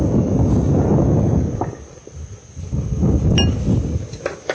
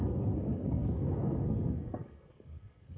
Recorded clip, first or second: first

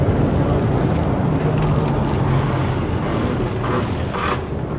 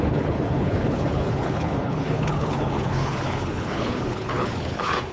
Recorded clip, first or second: first